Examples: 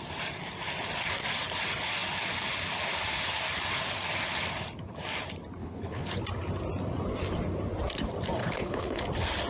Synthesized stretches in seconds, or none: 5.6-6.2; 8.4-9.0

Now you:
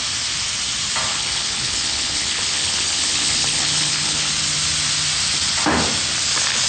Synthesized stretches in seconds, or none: 1.1-4.3

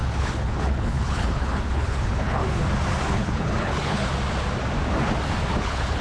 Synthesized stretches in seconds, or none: 0.0-2.4; 3.1-4.1; 5.6-6.0

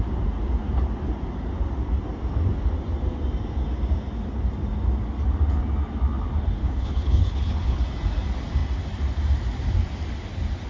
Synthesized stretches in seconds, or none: 6.6-7.8

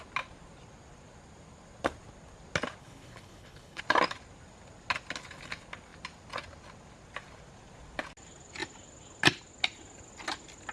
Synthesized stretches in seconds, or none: 2.8-3.8

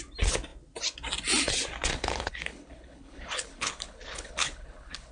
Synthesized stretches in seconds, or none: 1.9-5.1

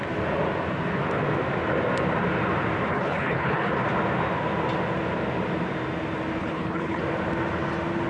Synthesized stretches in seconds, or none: 2.9-3.7; 6.4-7.0